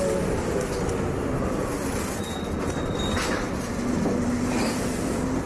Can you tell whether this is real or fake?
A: real